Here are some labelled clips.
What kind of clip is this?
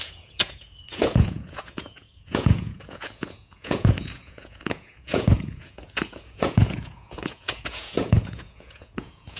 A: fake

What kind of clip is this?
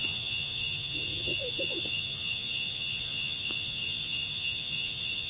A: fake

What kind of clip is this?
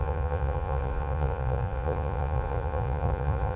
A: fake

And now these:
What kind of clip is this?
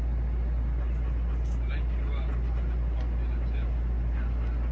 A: real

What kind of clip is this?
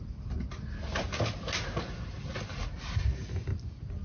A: real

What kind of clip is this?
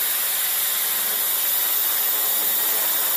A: real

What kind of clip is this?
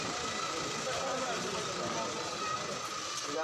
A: real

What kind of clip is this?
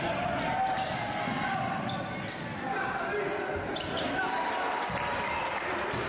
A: real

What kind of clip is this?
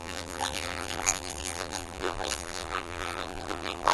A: fake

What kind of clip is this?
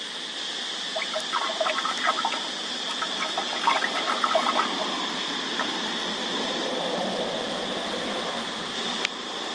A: fake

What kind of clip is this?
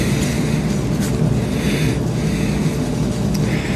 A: real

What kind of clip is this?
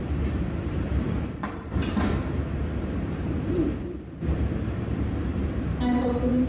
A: fake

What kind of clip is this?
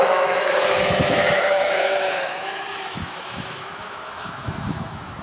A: fake